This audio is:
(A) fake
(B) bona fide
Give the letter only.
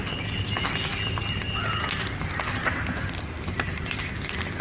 B